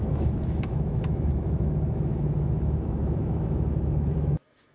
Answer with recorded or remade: remade